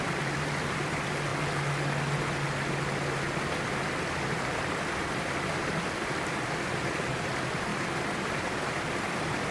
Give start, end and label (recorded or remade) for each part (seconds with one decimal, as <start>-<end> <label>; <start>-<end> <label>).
0.0-1.3 remade; 1.3-3.5 recorded; 3.5-9.5 remade